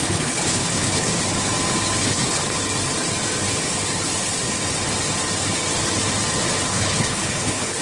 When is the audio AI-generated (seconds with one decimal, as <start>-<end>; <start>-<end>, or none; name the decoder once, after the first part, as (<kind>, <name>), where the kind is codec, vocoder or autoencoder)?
0.0-1.1 (codec, HILCodec); 2.0-2.4; 6.7-7.8